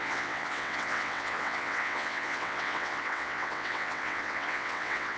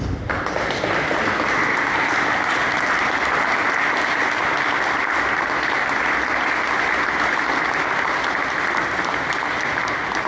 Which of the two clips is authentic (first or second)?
second